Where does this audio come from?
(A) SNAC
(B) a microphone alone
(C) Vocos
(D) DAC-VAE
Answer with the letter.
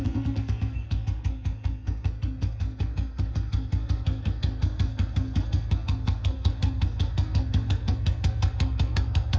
A